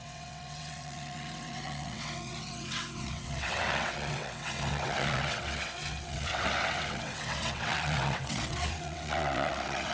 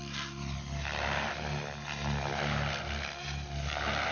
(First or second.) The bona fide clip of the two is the second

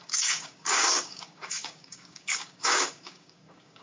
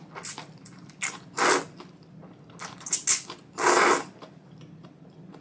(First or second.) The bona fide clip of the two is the second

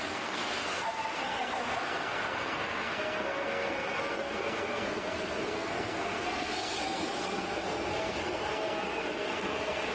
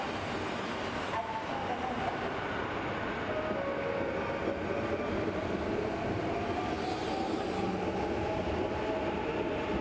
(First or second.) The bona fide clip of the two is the second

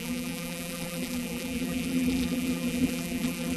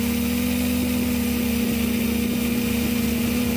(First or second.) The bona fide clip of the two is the second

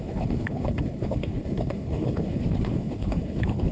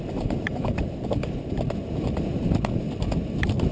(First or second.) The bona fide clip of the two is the second